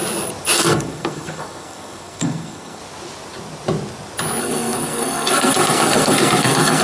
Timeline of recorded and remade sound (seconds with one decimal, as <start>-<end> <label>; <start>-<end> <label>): 0.0-0.6 recorded; 0.6-2.8 remade; 2.8-4.4 recorded; 4.4-6.8 remade